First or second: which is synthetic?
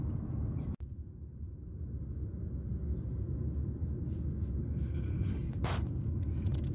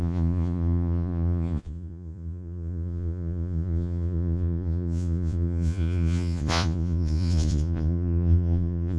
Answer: second